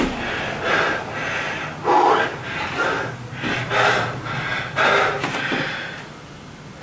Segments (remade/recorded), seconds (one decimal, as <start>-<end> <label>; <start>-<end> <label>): 0.0-6.8 recorded